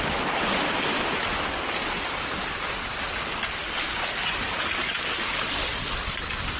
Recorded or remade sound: recorded